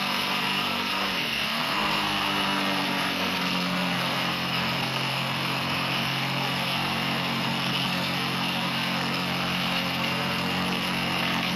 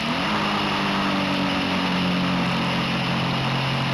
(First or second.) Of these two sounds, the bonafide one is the second